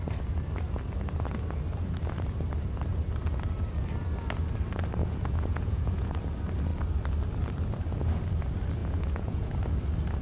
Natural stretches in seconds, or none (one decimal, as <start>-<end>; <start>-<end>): 0.0-5.0; 6.1-8.8; 9.5-10.2